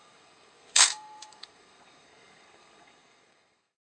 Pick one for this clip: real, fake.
fake